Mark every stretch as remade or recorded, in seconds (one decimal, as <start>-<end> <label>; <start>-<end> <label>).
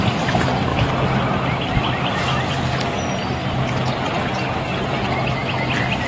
0.0-6.1 recorded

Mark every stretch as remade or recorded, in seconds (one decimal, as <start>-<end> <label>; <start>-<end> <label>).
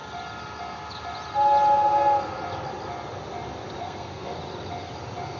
0.0-3.8 recorded; 3.8-4.4 remade; 4.4-5.4 recorded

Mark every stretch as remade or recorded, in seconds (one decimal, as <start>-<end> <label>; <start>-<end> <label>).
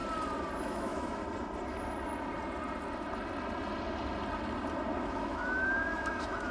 0.0-0.6 recorded; 0.6-1.2 remade; 1.2-5.0 recorded; 5.0-6.5 remade